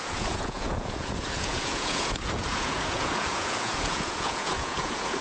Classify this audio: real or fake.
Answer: fake